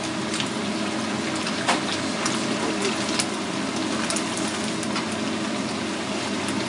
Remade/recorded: recorded